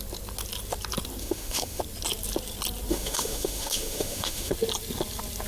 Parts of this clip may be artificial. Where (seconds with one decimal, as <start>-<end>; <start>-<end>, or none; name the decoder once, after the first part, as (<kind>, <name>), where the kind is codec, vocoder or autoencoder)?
1.2-1.8 (autoencoder, DAC-VAE); 2.9-4.5